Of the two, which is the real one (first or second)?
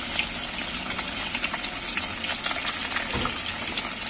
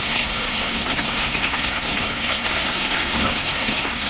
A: first